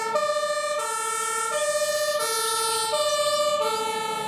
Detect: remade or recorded recorded